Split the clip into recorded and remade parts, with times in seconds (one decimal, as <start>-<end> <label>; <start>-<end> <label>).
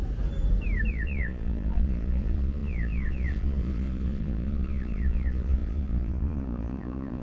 0.0-0.9 recorded; 0.9-7.2 remade